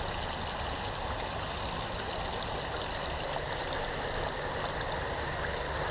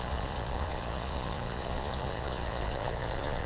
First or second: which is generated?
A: second